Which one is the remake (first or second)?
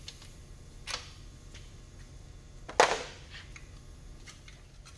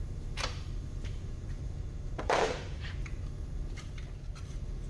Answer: second